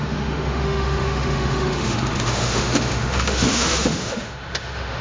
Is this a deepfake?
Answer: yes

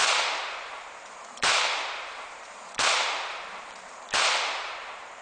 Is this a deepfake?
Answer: yes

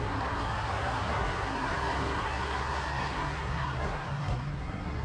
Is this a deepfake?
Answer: yes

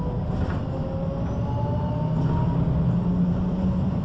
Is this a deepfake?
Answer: no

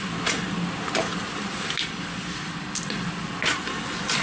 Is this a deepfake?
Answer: no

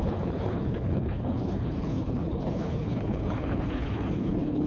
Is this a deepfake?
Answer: yes